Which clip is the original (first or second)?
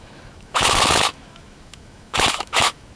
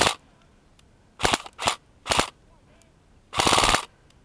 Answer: second